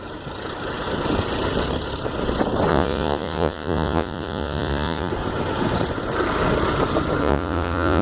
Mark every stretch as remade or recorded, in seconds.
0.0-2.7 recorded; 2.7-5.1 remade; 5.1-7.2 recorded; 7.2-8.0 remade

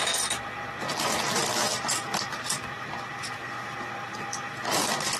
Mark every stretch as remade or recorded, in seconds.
0.0-5.2 recorded

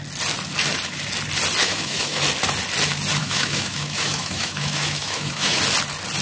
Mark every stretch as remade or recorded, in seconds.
0.0-1.6 recorded; 1.6-2.2 remade; 2.2-3.2 recorded; 3.2-5.6 remade; 5.6-6.2 recorded

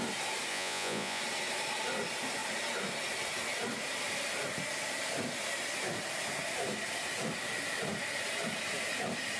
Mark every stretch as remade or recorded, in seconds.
0.0-0.5 recorded; 0.5-1.2 remade; 1.2-9.4 recorded